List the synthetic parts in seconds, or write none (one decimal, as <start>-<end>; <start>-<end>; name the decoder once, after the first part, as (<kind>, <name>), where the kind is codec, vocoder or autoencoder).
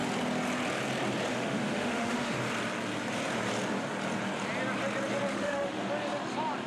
1.3-2.4 (autoencoder, DAC-VAE); 5.3-5.8